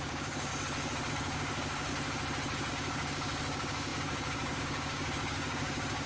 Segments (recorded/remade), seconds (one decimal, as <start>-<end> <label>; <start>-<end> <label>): 0.0-0.5 remade; 0.5-1.1 recorded; 1.1-1.9 remade; 1.9-2.7 recorded; 2.7-6.1 remade